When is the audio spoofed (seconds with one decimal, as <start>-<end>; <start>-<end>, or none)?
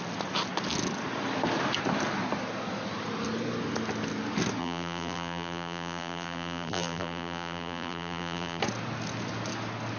4.6-8.6